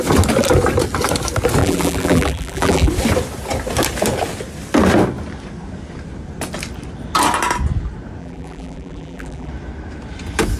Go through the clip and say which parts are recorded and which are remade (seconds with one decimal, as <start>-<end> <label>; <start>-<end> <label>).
0.0-1.6 recorded; 1.6-2.9 remade; 2.9-8.2 recorded; 8.2-9.5 remade; 9.5-10.6 recorded